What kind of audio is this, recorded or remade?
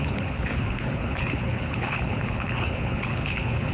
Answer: remade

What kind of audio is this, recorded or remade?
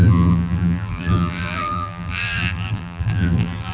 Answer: remade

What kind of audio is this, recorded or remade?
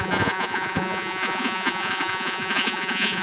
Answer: remade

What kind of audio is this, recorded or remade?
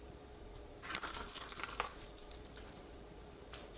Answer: remade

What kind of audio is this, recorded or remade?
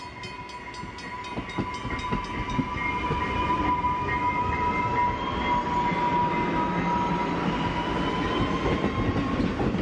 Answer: recorded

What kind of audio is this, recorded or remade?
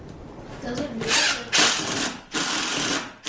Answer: recorded